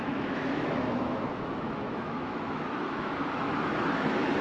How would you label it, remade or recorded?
remade